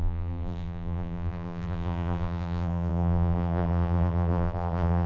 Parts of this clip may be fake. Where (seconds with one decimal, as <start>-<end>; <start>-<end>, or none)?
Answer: 0.0-5.1